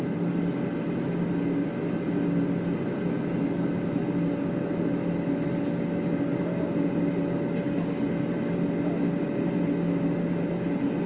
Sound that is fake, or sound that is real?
real